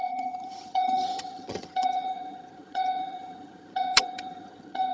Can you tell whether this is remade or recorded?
remade